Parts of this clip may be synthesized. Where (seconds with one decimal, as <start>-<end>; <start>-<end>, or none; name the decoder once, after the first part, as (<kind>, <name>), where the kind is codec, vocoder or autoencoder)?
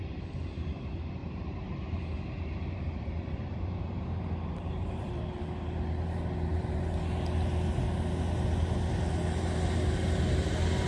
1.2-5.0 (vocoder, BigVGAN v2)